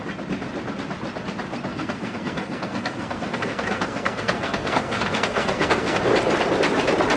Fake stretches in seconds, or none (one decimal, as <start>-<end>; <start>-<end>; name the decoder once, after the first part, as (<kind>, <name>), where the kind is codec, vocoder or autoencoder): 1.7-6.0 (codec, SNAC)